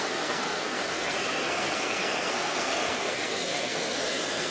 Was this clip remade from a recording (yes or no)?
yes